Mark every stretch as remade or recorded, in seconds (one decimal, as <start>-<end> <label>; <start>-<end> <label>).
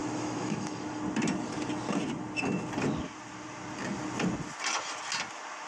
0.0-1.0 remade; 1.0-5.7 recorded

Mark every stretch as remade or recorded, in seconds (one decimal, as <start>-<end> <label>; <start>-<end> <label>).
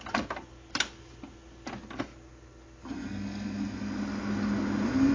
0.0-5.1 recorded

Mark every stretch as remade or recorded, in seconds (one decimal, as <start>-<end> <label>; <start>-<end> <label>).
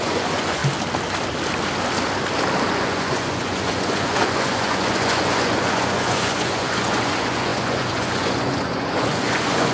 0.0-0.6 remade; 0.6-2.7 recorded; 2.7-9.7 remade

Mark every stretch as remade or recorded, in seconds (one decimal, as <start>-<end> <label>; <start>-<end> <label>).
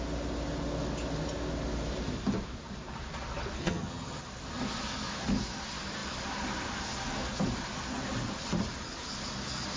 0.0-3.6 recorded; 3.6-4.2 remade; 4.2-9.8 recorded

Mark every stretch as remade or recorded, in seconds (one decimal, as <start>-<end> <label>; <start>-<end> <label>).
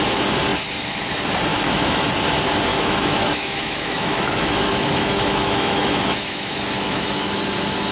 0.0-1.5 recorded; 1.5-2.1 remade; 2.1-2.7 recorded; 2.7-7.4 remade; 7.4-7.9 recorded